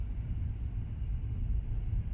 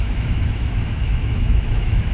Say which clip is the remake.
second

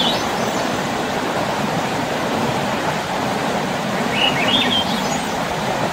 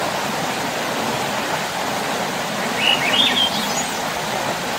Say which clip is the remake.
first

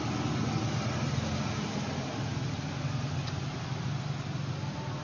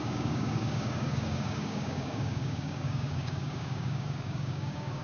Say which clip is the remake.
second